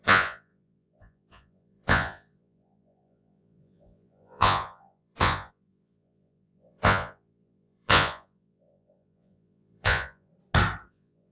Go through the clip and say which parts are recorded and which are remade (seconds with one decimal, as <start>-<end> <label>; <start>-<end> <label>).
0.0-10.3 remade; 10.3-10.9 recorded; 10.9-11.3 remade